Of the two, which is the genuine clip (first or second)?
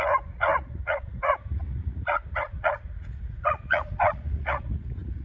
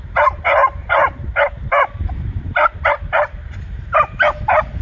second